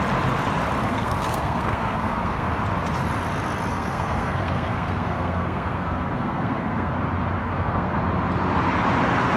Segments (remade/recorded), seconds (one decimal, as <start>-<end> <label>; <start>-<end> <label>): 0.0-0.8 recorded; 0.8-2.5 remade; 2.5-3.7 recorded; 3.7-6.9 remade; 6.9-7.4 recorded; 7.4-8.0 remade; 8.0-9.4 recorded